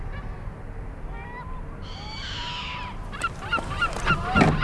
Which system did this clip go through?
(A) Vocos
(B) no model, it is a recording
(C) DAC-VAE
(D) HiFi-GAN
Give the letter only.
B